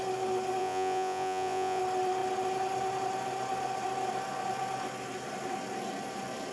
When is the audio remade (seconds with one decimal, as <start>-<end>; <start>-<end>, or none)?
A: 0.6-1.8